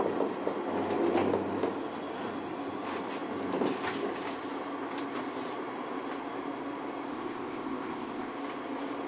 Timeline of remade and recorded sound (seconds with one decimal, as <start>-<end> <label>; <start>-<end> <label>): 0.0-7.1 recorded; 7.1-8.3 remade; 8.3-9.1 recorded